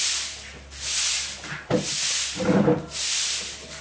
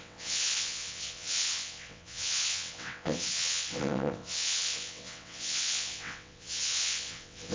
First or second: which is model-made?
second